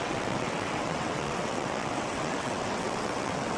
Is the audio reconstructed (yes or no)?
yes